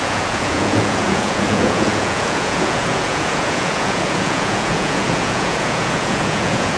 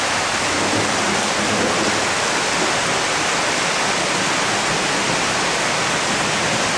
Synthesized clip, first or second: first